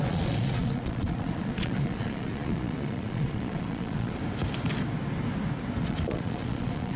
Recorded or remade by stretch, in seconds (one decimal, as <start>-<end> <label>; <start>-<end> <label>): 0.0-4.2 remade; 4.2-5.8 recorded; 5.8-7.0 remade